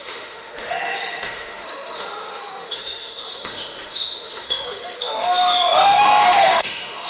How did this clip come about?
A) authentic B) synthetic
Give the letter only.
B